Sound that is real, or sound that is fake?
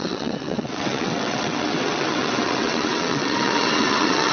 fake